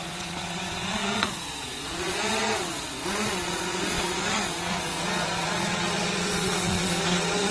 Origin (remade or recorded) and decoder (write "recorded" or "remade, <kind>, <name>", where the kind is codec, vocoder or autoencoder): remade, vocoder, Vocos